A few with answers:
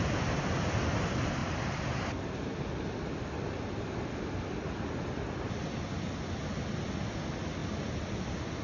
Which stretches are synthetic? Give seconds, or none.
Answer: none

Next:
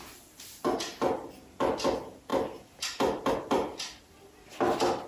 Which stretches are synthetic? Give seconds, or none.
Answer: none

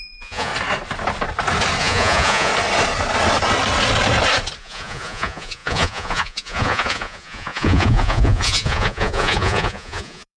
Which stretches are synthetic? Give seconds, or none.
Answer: 0.0-0.5 (vocoder, Vocos); 1.8-2.5; 4.6-10.4

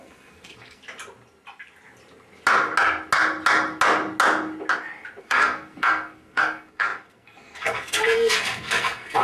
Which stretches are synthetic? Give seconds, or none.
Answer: 0.0-0.8 (codec, SNAC); 5.2-9.2

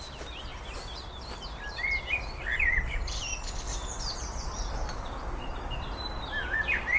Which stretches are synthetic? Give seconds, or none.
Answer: none